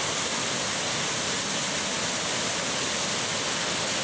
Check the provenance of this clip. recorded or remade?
recorded